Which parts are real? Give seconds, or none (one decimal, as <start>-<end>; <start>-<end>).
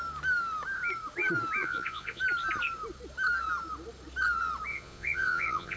0.0-1.6; 2.2-4.7